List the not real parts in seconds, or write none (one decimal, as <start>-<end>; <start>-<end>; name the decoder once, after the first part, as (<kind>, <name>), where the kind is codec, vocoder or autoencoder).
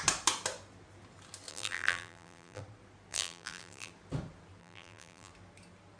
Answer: 1.5-2.6 (vocoder, BigVGAN v2); 3.1-3.9; 4.6-5.3